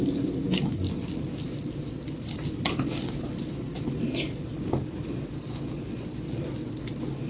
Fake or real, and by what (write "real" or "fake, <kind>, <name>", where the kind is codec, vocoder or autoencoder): real